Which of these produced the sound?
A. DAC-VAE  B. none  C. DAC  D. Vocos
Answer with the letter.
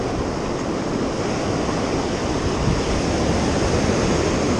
B